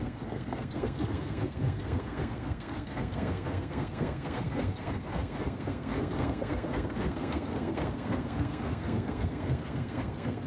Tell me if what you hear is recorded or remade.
remade